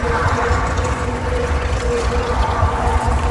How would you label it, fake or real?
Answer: fake